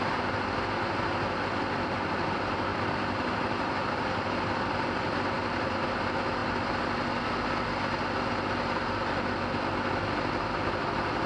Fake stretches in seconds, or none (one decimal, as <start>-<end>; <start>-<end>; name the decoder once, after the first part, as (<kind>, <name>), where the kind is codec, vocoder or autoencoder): 2.7-4.6 (vocoder, BigVGAN v2)